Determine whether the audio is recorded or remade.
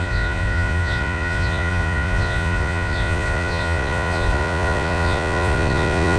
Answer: remade